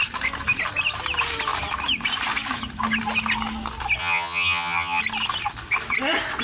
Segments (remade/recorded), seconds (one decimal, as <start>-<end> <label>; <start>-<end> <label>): 0.0-4.0 recorded; 4.0-5.0 remade; 5.0-6.4 recorded